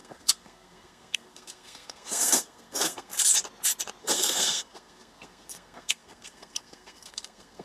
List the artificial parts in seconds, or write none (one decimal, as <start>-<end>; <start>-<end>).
0.0-3.1; 4.0-7.6